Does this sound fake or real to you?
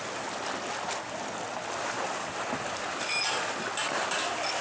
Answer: real